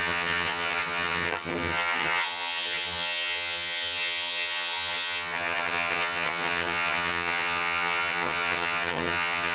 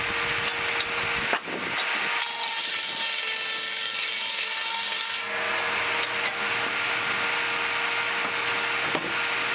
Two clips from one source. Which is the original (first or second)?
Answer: second